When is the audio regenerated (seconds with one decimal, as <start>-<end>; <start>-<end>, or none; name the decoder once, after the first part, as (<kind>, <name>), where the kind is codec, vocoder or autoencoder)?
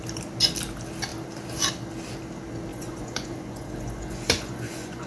2.7-5.1 (vocoder, Vocos)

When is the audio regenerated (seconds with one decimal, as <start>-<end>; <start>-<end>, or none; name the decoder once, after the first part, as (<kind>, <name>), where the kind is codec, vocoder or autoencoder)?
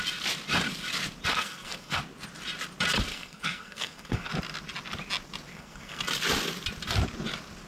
1.3-2.0 (codec, SNAC); 3.1-4.3; 5.5-6.0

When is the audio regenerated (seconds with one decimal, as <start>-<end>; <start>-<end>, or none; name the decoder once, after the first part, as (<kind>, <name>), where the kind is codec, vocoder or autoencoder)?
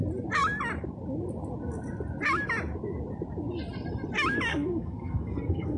4.5-5.8 (codec, SNAC)